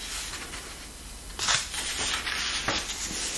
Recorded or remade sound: recorded